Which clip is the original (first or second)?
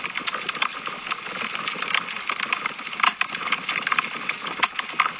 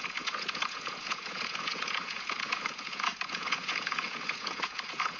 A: first